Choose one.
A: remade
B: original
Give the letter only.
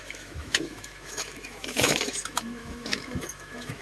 A